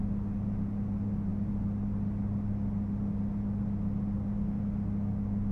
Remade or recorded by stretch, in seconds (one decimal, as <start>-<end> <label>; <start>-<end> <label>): 0.0-5.5 recorded